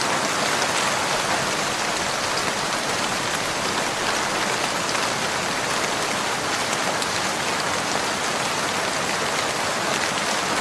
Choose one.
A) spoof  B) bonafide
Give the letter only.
B